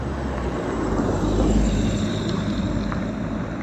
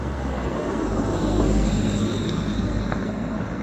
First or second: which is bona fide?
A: first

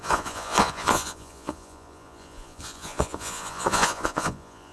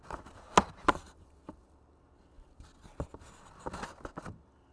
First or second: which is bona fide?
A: second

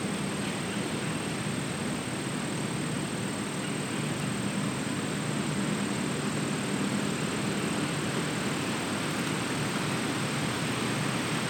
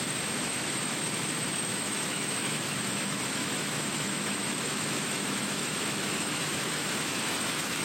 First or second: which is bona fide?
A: first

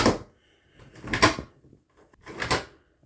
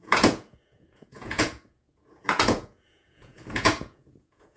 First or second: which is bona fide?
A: first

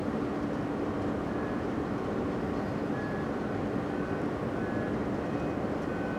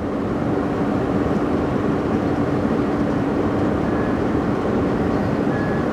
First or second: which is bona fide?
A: first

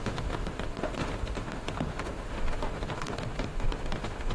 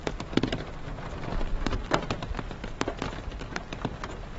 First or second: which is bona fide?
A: second